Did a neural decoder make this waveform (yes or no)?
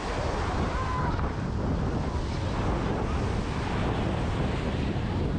yes